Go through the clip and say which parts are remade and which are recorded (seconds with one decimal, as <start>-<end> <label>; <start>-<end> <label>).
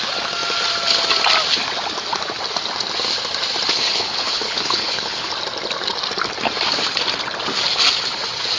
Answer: 0.0-3.7 recorded; 3.7-5.3 remade; 5.3-8.6 recorded